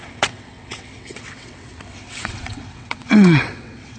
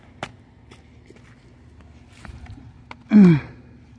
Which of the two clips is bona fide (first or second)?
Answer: second